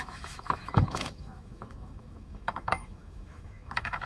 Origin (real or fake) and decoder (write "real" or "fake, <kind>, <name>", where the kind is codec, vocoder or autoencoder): fake, autoencoder, DAC-VAE